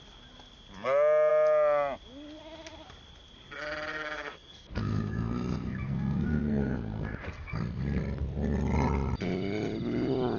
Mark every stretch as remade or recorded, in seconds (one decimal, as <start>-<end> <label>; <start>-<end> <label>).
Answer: 0.0-3.9 recorded; 3.9-8.0 remade; 8.0-10.4 recorded